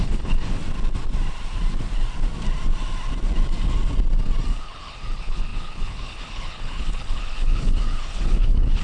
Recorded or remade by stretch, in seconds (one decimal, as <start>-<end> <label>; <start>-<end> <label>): 0.0-0.6 remade; 0.6-4.5 recorded; 4.5-8.8 remade